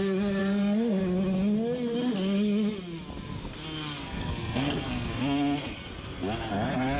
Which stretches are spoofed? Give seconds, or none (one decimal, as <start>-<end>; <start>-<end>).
0.4-1.0; 4.0-5.1